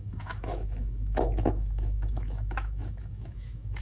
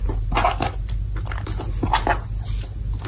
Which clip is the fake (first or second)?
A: first